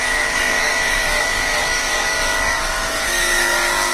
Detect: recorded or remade remade